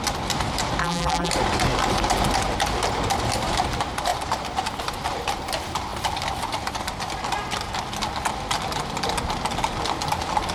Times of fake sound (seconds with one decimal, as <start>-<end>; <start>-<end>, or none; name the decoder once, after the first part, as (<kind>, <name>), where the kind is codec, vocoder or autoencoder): 0.8-1.3 (vocoder, BigVGAN v2)